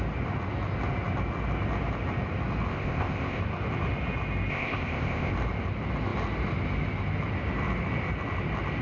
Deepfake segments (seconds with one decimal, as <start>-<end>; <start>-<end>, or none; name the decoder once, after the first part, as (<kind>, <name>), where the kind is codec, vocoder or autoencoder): 2.7-3.4 (codec, ZipCodec); 4.5-5.3